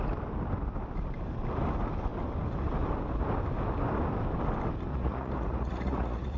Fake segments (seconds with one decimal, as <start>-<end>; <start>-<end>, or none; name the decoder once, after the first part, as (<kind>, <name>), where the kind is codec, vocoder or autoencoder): 4.9-6.4 (vocoder, Vocos)